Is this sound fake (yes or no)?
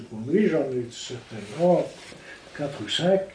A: no